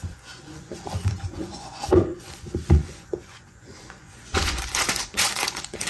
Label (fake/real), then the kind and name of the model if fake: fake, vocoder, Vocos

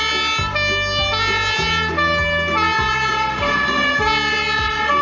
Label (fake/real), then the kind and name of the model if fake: real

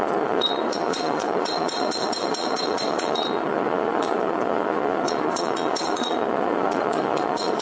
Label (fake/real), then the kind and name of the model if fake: fake, vocoder, Vocos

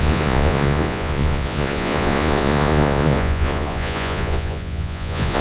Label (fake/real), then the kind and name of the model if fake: fake, vocoder, Vocos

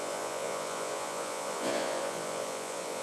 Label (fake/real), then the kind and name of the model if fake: fake, vocoder, Vocos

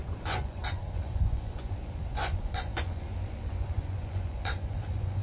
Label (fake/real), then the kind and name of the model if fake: fake, vocoder, Vocos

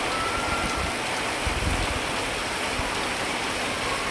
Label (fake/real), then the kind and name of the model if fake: real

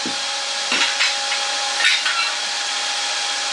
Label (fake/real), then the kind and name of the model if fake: real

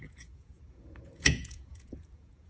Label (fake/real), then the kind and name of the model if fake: fake, vocoder, Vocos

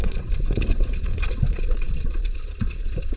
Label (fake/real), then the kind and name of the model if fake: fake, vocoder, Vocos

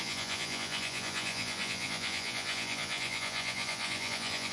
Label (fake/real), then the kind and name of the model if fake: fake, vocoder, Vocos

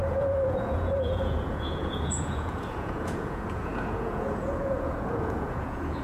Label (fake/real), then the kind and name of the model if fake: fake, vocoder, Vocos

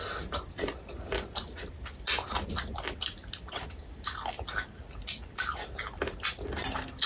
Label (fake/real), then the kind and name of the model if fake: real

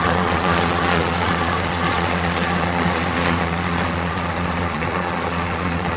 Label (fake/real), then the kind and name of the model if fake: fake, vocoder, Vocos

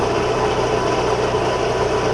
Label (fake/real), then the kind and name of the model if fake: real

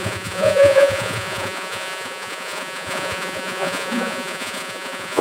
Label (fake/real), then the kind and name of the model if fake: fake, vocoder, Vocos